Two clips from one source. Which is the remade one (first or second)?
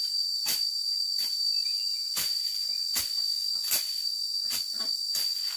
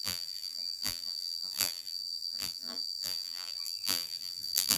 second